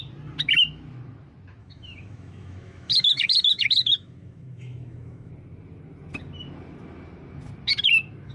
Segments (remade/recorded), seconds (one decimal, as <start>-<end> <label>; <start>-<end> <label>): 0.0-1.6 recorded; 1.6-5.3 remade; 5.3-8.3 recorded

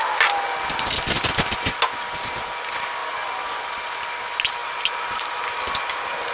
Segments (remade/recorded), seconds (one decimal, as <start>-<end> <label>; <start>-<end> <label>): 0.0-3.0 recorded; 3.0-4.1 remade; 4.1-4.6 recorded; 4.6-5.4 remade; 5.4-6.3 recorded

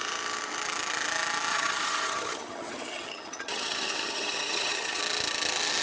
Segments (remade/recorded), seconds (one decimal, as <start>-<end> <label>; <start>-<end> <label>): 0.0-1.5 recorded; 1.5-5.0 remade; 5.0-5.8 recorded

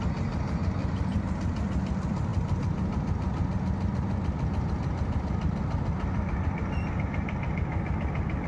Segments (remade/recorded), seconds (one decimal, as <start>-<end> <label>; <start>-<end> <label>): 0.0-0.8 recorded; 0.8-1.4 remade; 1.4-8.5 recorded

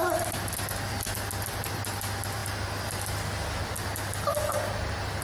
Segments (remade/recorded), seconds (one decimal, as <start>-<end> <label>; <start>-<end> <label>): 0.0-5.2 recorded